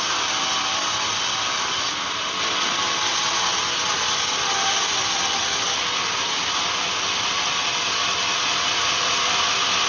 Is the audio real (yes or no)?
yes